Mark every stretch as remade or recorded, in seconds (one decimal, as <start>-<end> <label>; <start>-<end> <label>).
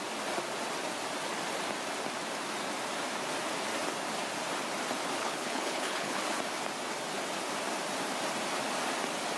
0.0-5.2 recorded; 5.2-6.2 remade; 6.2-9.4 recorded